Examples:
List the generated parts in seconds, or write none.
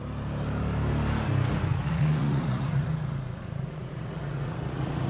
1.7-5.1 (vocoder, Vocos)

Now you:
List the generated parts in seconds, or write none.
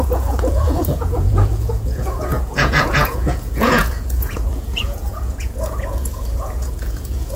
0.0-7.4 (vocoder, Vocos)